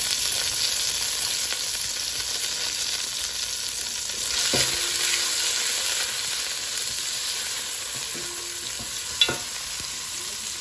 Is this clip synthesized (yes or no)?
no